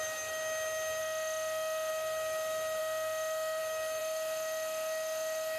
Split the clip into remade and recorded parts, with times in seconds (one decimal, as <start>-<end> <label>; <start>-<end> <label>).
0.0-1.0 recorded; 1.0-1.9 remade; 1.9-2.8 recorded; 2.8-3.6 remade; 3.6-4.0 recorded; 4.0-5.6 remade